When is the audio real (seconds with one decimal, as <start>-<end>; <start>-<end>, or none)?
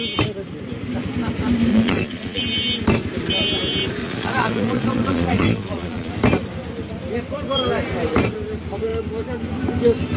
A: 0.0-1.7; 2.4-4.0; 6.1-10.2